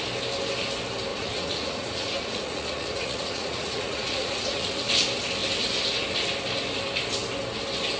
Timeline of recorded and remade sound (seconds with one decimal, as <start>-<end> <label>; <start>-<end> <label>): 0.0-1.1 recorded; 1.1-4.9 remade; 4.9-8.0 recorded